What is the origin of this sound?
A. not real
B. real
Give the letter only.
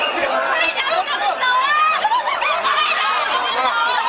B